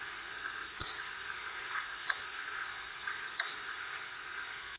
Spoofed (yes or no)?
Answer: yes